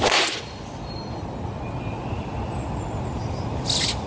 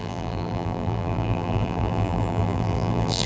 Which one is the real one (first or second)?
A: first